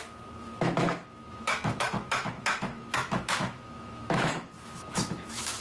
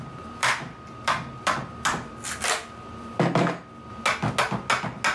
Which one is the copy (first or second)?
first